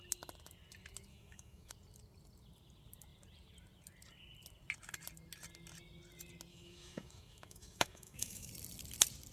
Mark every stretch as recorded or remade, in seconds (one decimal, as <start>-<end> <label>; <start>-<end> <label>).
0.0-1.1 recorded; 1.1-1.7 remade; 1.7-6.5 recorded; 6.5-8.5 remade; 8.5-9.3 recorded